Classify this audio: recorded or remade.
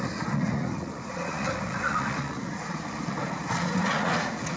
remade